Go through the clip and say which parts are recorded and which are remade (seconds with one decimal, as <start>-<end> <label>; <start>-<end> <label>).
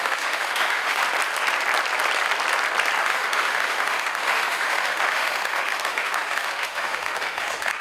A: 0.0-1.0 remade; 1.0-3.0 recorded; 3.0-7.8 remade